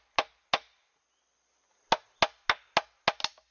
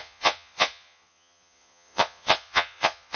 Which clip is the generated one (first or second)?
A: second